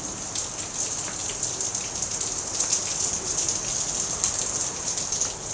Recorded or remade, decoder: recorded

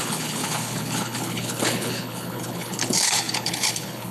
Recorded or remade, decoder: remade, codec, HILCodec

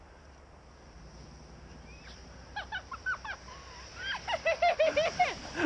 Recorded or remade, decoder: recorded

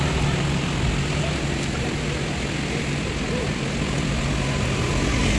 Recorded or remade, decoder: recorded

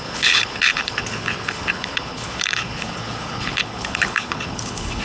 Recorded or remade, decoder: remade, codec, HILCodec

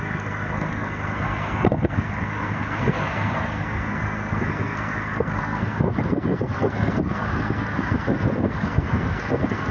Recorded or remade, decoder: remade, codec, SNAC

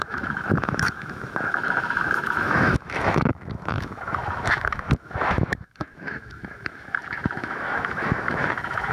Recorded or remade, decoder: remade, autoencoder, DAC-VAE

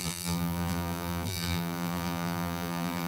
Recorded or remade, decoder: remade, vocoder, BigVGAN v2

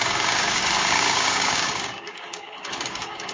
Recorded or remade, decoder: remade, codec, DAC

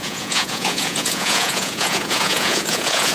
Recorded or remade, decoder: remade, vocoder, Vocos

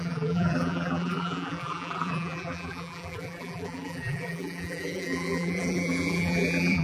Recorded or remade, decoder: remade, vocoder, BigVGAN v2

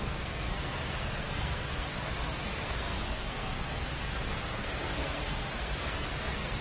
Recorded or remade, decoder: remade, codec, SNAC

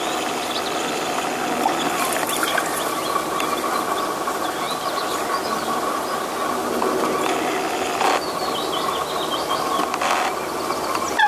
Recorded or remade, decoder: recorded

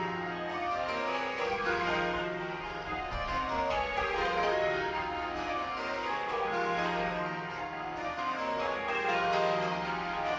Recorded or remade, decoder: remade, codec, SNAC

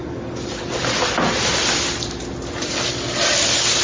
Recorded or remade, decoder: recorded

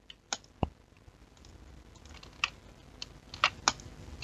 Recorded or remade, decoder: recorded